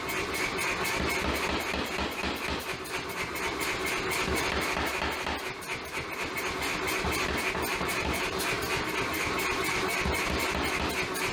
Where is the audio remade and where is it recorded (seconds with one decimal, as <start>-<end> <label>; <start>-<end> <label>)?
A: 0.0-7.7 recorded; 7.7-8.6 remade; 8.6-11.3 recorded